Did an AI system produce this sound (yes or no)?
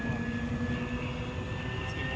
no